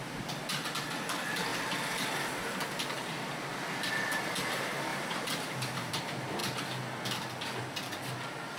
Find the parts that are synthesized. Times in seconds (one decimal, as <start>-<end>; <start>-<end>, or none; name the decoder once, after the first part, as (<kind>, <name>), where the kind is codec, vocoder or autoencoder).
4.9-5.9 (vocoder, BigVGAN v2)